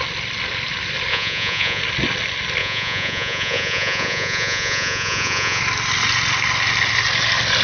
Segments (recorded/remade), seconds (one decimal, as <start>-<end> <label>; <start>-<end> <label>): 0.0-1.1 recorded; 1.1-1.8 remade; 1.8-2.6 recorded; 2.6-5.6 remade; 5.6-7.6 recorded